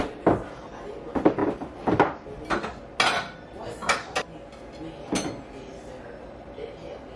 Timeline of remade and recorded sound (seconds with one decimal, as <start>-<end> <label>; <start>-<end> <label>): 0.0-7.2 recorded